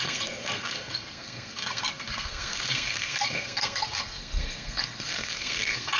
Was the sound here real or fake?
fake